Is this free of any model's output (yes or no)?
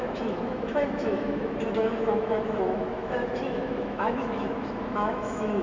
no